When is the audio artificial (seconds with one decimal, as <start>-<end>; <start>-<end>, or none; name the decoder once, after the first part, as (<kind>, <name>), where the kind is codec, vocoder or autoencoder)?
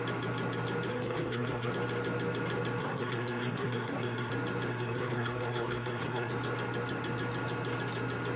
0.9-1.7 (codec, SNAC); 2.8-4.3; 4.7-6.3